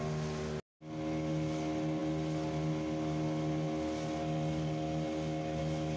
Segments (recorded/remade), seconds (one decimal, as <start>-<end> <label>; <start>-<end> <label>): 0.0-6.0 recorded